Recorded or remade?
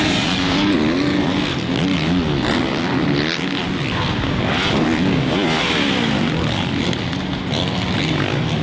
recorded